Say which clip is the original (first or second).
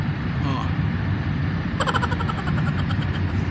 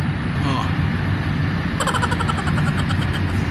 second